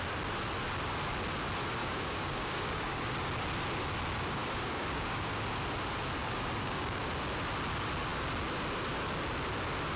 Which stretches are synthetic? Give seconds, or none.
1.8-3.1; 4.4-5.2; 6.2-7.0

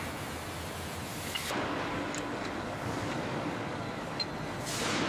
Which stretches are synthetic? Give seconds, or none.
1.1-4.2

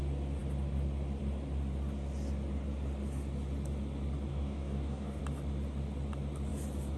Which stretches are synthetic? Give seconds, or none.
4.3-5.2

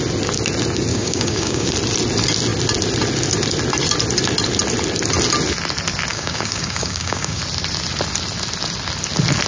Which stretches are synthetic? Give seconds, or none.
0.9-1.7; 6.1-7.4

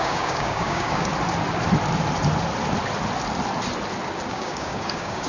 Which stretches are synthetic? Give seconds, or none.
0.0-1.1; 4.3-5.3

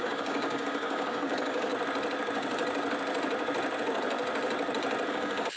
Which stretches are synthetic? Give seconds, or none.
0.0-1.7; 5.1-5.6

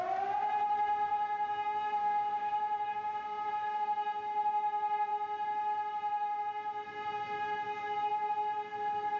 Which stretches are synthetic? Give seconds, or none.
1.1-3.5